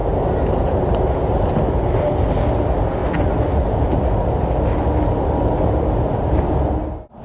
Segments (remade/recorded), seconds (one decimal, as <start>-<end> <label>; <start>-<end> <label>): 0.0-7.2 recorded